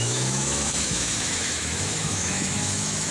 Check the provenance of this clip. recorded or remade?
remade